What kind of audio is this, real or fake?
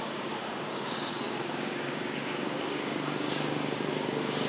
fake